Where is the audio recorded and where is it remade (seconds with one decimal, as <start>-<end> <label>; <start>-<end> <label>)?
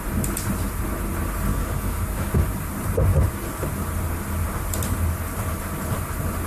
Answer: 0.0-1.5 recorded; 1.5-2.3 remade; 2.3-6.5 recorded